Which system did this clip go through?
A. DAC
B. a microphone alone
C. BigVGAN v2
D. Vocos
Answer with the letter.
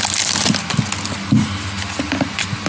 B